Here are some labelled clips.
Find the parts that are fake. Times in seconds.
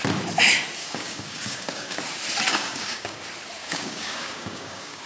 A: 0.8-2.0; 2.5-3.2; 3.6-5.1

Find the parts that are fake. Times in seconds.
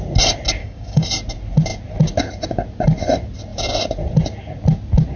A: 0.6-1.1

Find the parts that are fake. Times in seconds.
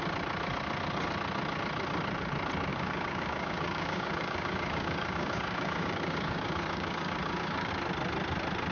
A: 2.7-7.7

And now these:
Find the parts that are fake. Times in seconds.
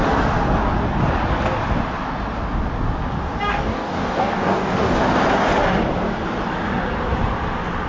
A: 3.5-5.0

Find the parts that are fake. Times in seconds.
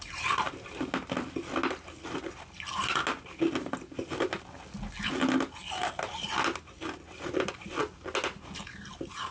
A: none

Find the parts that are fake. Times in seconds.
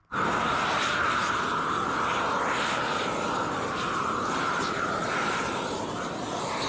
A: none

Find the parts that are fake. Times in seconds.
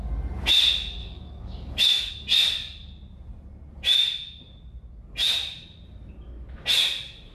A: 1.0-2.1